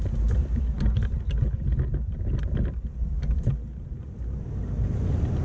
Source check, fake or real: real